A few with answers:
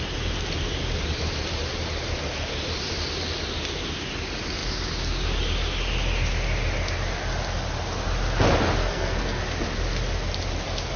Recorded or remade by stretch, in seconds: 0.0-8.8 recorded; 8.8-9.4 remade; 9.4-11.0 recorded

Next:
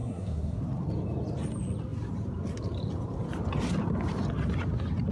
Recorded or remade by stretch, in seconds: 0.0-0.6 remade; 0.6-5.1 recorded